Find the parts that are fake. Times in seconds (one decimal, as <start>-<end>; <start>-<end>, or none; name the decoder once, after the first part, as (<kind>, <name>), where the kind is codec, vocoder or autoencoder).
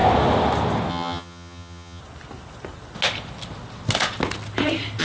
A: 0.9-2.0 (vocoder, HiFi-GAN)